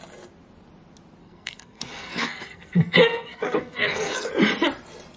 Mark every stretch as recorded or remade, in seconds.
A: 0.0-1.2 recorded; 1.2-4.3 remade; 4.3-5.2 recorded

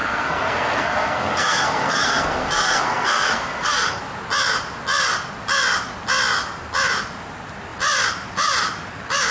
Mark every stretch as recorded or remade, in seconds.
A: 0.0-4.0 remade; 4.0-9.3 recorded

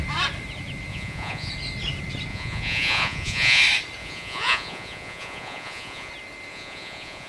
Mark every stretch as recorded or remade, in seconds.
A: 0.0-0.9 recorded; 0.9-1.5 remade; 1.5-2.3 recorded; 2.3-3.6 remade; 3.6-4.0 recorded; 4.0-6.1 remade; 6.1-6.5 recorded; 6.5-7.3 remade